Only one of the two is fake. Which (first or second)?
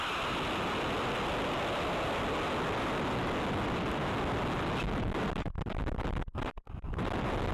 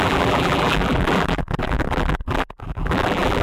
second